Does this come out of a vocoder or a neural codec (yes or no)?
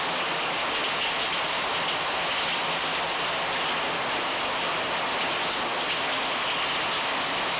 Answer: no